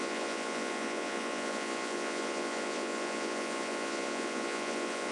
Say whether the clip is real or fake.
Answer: fake